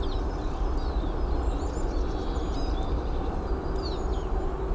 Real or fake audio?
real